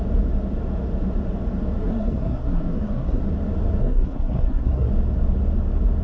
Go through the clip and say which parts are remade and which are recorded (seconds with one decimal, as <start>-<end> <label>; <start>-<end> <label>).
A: 0.0-1.8 recorded; 1.8-3.2 remade; 3.2-3.8 recorded; 3.8-4.9 remade; 4.9-6.0 recorded